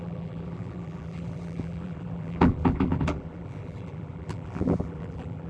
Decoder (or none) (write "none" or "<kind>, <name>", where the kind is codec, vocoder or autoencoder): vocoder, BigVGAN v2